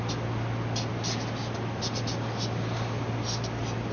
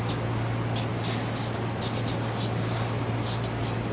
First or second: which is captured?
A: first